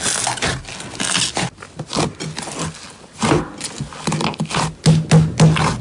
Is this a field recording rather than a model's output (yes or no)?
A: yes